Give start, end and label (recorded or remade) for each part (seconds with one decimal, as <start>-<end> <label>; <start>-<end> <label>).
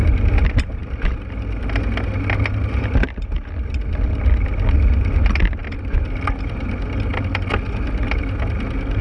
0.0-9.0 recorded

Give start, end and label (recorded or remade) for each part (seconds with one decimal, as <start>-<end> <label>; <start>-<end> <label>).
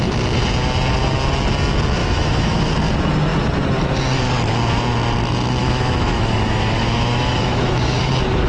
0.0-2.0 recorded; 2.0-2.7 remade; 2.7-5.6 recorded; 5.6-8.1 remade; 8.1-8.5 recorded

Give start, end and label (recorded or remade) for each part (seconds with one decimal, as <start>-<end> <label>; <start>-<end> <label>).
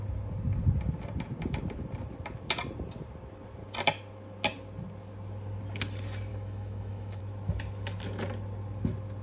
0.0-6.3 recorded; 6.3-7.2 remade; 7.2-9.2 recorded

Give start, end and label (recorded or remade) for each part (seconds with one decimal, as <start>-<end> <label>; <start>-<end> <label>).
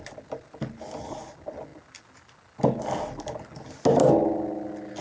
0.0-5.0 recorded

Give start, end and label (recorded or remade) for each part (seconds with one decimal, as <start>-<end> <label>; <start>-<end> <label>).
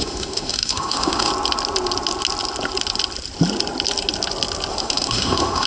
0.0-1.3 remade; 1.3-4.7 recorded; 4.7-5.7 remade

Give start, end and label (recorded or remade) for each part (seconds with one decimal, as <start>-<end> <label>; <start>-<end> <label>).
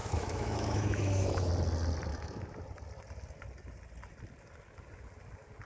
0.0-1.5 remade; 1.5-2.1 recorded; 2.1-2.6 remade; 2.6-5.7 recorded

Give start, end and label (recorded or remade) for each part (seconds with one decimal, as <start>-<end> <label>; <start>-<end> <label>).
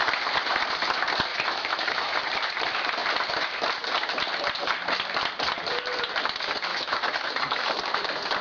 0.0-1.3 recorded; 1.3-2.2 remade; 2.2-6.7 recorded; 6.7-7.7 remade; 7.7-8.4 recorded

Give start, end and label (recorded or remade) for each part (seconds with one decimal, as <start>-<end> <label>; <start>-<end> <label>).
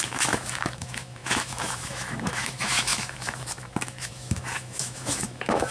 0.0-5.7 remade